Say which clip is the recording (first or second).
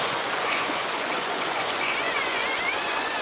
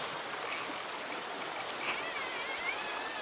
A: second